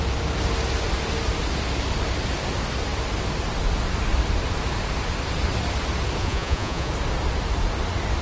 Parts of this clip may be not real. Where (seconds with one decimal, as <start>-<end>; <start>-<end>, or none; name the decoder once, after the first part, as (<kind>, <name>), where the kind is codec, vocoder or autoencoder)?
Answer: 6.2-6.9 (vocoder, Vocos)